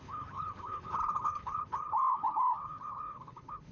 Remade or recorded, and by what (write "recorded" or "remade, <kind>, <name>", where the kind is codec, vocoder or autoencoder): remade, codec, HILCodec